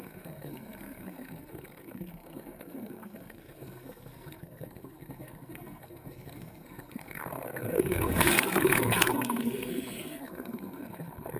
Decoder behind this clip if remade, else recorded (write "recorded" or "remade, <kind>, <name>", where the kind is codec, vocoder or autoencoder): remade, codec, SNAC